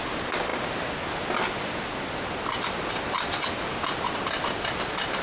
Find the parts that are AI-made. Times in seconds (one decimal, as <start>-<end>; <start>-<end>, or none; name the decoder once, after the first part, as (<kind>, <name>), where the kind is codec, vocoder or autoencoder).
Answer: none